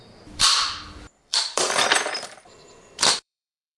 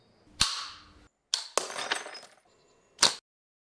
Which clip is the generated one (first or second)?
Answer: first